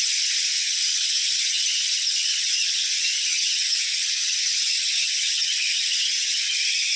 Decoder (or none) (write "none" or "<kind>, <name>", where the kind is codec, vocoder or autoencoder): vocoder, HiFi-GAN